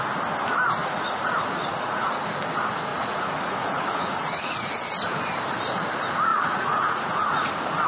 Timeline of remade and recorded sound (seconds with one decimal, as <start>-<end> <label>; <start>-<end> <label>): 0.0-0.8 recorded; 0.8-2.2 remade; 2.2-2.9 recorded; 2.9-4.7 remade; 4.7-6.3 recorded; 6.3-7.5 remade; 7.5-7.9 recorded